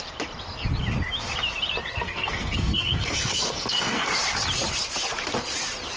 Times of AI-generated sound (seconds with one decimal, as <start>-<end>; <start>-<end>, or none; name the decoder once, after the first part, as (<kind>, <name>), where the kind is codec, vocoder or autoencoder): 1.9-4.1 (codec, SNAC)